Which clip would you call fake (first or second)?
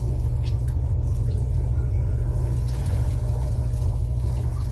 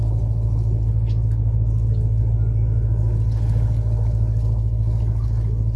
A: first